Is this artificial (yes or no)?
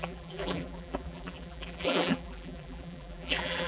yes